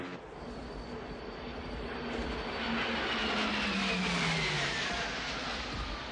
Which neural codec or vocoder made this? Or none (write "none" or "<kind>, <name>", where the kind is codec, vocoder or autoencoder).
none